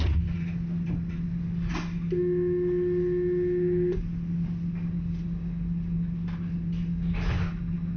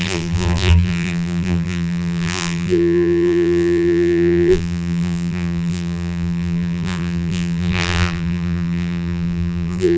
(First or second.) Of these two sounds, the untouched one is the first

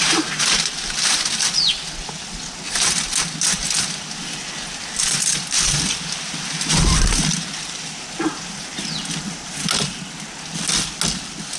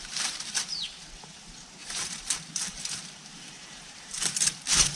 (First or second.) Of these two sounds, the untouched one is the first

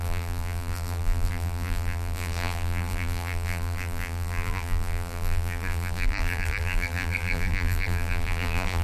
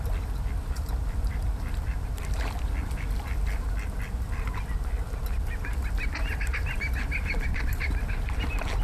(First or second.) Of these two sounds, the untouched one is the second